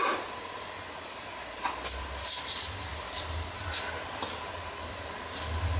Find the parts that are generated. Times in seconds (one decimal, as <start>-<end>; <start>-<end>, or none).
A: none